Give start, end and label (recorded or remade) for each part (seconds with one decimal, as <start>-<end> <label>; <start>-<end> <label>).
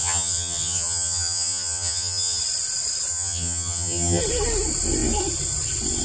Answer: 0.0-2.4 remade; 2.4-3.1 recorded; 3.1-4.2 remade; 4.2-6.0 recorded